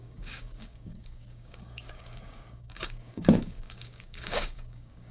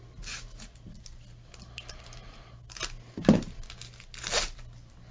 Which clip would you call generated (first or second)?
first